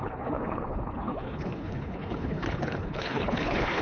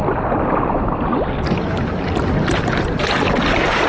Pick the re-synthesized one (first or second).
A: first